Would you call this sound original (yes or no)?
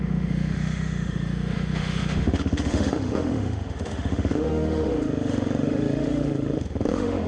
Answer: no